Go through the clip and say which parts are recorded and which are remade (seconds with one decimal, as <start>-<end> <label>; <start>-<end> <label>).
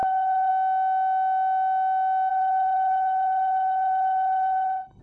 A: 0.0-0.5 remade; 0.5-2.3 recorded; 2.3-5.0 remade